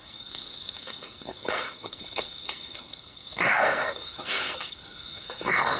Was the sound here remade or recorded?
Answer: remade